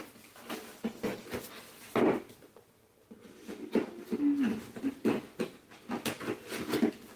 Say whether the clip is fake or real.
real